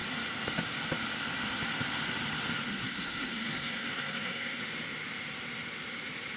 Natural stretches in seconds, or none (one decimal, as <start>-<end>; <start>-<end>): 0.0-2.7; 4.6-6.4